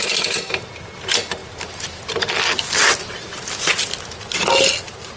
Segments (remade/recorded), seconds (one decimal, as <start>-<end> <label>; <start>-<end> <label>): 0.0-5.2 recorded